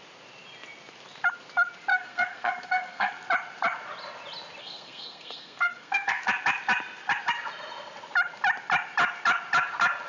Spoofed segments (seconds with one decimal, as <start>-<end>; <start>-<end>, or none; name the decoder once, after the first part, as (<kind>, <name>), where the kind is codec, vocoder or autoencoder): 1.9-3.1 (codec, SNAC); 4.6-6.2

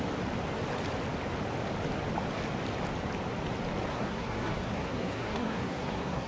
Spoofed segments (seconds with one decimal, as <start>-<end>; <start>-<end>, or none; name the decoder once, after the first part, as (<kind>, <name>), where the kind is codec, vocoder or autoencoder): 3.9-6.3 (codec, SNAC)

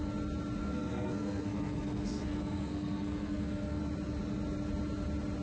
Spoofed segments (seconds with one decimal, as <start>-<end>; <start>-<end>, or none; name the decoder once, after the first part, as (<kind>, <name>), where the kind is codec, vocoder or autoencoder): 0.6-3.8 (codec, SNAC)

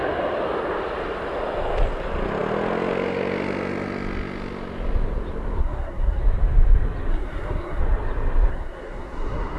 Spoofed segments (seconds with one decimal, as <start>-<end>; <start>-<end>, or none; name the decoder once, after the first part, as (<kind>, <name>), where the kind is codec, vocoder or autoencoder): 5.6-6.2 (codec, SNAC); 7.1-7.8; 8.5-9.6

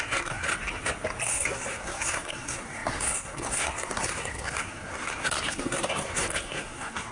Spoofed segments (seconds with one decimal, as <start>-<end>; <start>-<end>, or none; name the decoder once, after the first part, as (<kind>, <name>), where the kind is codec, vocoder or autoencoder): 0.0-0.5 (codec, SNAC); 1.2-7.1

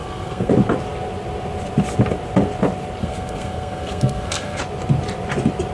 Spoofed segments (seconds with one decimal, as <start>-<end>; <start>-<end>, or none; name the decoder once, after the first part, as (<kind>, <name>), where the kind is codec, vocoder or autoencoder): 0.0-0.5 (codec, SNAC); 3.0-4.6

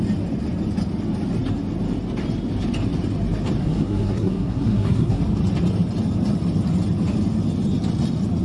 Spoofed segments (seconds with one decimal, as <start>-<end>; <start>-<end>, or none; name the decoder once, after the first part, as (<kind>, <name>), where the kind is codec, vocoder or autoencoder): 3.6-5.2 (codec, SNAC)